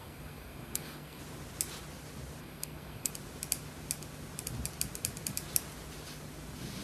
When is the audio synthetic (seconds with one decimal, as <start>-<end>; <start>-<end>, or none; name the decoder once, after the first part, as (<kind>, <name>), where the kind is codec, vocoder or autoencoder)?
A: 0.0-1.2 (codec, SNAC); 2.4-3.1